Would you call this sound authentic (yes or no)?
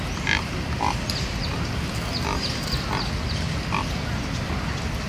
yes